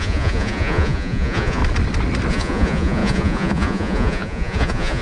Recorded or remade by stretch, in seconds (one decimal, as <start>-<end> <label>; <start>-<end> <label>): 0.0-1.6 remade; 1.6-2.3 recorded; 2.3-5.0 remade